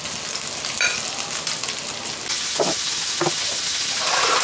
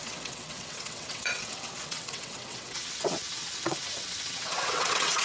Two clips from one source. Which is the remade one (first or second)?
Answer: second